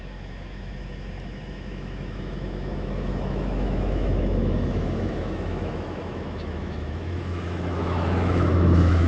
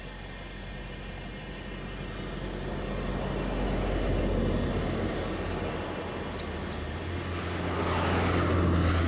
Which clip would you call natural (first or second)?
second